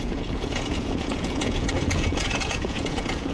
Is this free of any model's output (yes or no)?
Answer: no